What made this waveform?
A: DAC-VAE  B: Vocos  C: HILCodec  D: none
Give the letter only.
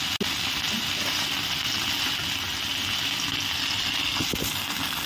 D